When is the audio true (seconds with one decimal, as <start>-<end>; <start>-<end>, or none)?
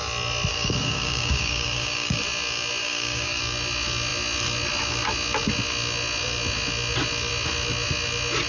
0.0-0.5; 2.2-2.8; 3.4-8.5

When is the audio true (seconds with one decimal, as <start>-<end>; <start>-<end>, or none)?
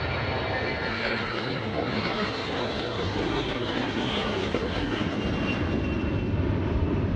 0.0-0.9; 5.2-7.2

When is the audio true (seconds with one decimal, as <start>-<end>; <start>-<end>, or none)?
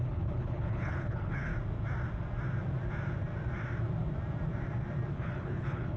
1.5-5.1